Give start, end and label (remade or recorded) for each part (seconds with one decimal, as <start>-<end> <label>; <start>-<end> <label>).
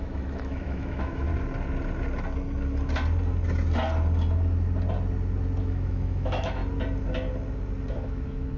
0.0-1.3 remade; 1.3-5.6 recorded; 5.6-6.6 remade; 6.6-7.9 recorded; 7.9-8.6 remade